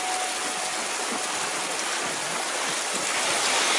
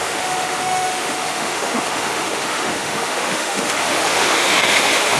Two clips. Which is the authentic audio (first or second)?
first